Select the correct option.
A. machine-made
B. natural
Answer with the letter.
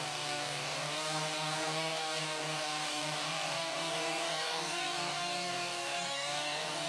A